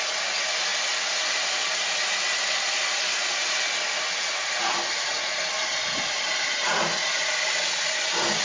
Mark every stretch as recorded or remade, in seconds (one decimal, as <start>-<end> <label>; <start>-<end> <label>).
0.0-3.4 recorded; 3.4-4.6 remade; 4.6-8.4 recorded